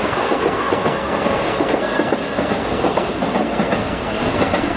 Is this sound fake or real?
fake